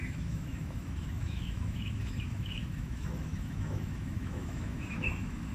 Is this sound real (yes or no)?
no